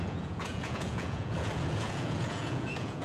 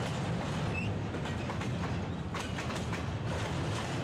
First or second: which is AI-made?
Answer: first